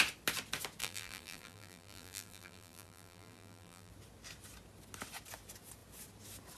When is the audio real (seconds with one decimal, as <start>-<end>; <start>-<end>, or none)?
0.0-0.8; 3.9-6.6